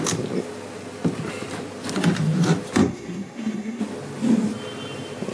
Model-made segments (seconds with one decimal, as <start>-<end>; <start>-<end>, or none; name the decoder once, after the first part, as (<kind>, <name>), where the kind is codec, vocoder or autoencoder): 2.8-3.8 (codec, SNAC)